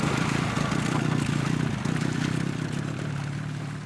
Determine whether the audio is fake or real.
real